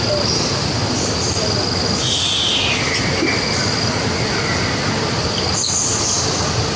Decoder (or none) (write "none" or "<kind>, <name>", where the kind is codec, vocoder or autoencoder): none